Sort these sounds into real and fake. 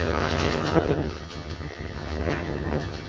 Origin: fake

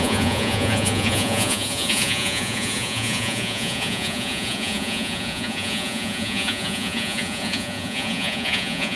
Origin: fake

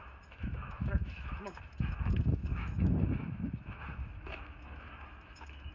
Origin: fake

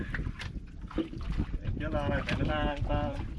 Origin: real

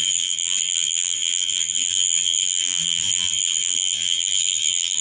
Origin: fake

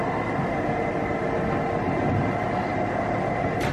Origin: real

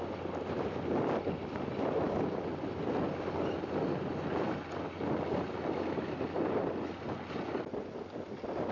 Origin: real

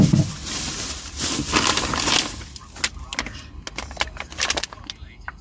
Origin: real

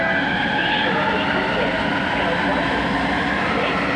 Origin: real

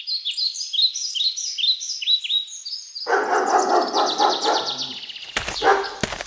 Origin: real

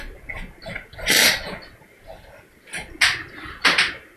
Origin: real